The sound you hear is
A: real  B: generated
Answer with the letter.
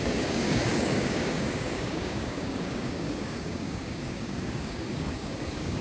B